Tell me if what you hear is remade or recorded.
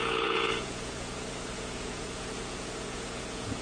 remade